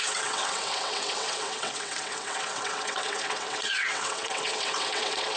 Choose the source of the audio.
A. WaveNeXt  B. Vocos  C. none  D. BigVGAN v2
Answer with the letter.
A